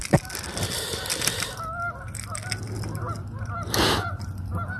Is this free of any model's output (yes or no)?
yes